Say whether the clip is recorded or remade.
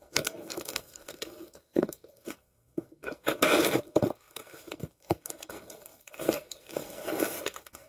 remade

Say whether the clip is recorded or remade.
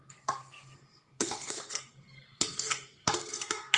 remade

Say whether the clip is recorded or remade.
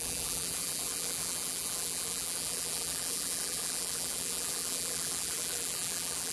remade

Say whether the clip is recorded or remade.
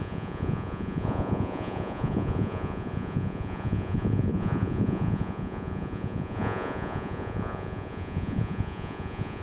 remade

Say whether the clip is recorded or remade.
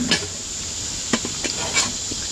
recorded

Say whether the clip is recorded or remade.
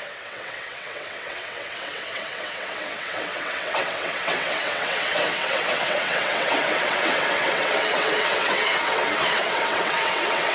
remade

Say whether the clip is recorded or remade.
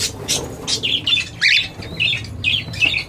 recorded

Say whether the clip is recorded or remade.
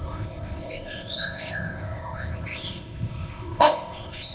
remade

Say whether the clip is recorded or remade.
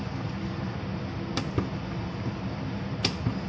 recorded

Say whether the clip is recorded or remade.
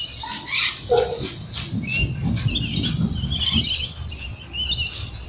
recorded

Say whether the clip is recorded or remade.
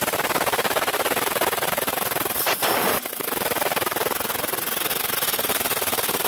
recorded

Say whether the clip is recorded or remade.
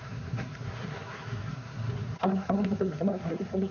remade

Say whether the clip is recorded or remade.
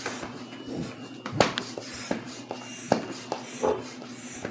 recorded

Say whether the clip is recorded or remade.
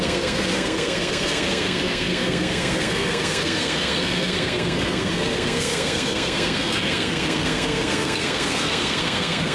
remade